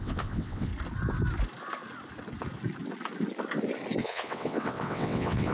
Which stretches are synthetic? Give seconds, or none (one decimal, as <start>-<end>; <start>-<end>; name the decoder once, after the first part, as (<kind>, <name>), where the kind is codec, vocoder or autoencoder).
0.0-0.7 (vocoder, WaveNeXt); 4.0-5.5